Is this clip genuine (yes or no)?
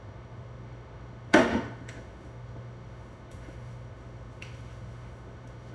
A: no